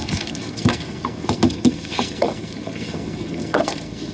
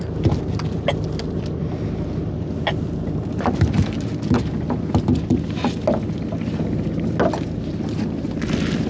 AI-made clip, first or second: first